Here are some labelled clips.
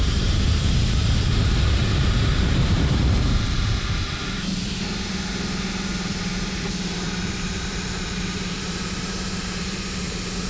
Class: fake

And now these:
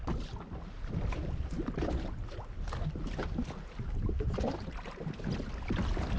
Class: real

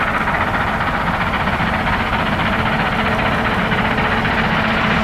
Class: fake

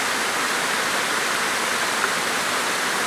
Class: real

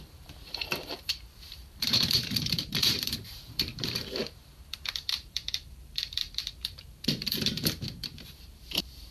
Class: fake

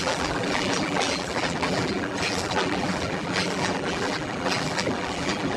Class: fake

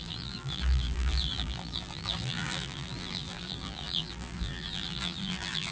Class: fake